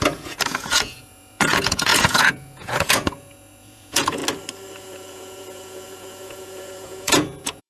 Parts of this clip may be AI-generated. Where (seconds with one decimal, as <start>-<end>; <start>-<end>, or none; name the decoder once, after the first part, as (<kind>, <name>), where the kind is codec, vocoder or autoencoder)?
0.0-4.2 (vocoder, Vocos); 4.8-7.7